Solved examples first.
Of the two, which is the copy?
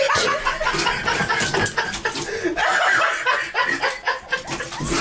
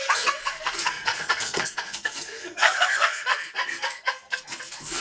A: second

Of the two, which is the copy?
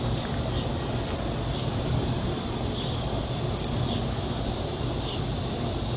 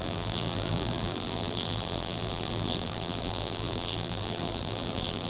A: second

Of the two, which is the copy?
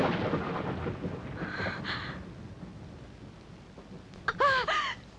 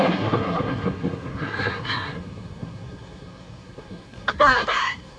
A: second